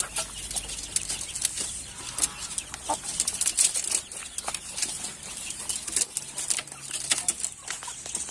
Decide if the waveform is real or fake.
real